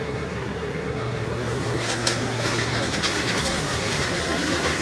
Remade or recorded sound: remade